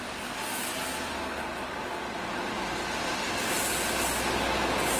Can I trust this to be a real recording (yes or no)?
yes